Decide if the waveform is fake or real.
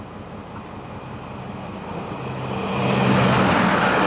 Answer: real